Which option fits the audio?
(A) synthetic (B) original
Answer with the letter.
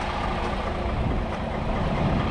B